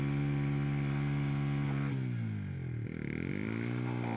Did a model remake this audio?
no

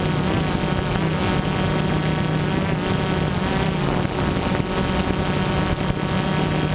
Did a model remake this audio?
no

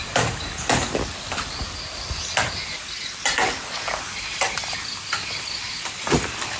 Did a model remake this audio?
no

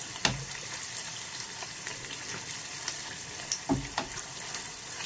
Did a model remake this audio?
no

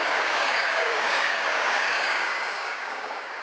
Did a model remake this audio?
yes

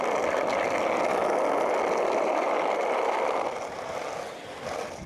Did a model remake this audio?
no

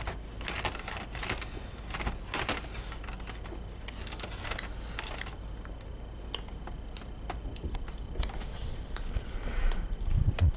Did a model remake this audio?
no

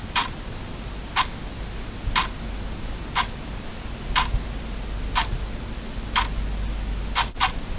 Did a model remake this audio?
no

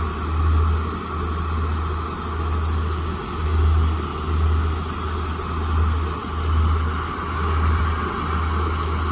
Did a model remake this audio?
no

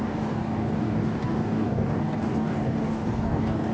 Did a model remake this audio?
yes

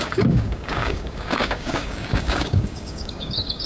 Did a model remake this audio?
yes